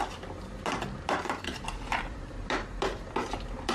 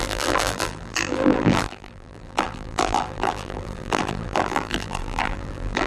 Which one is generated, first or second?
second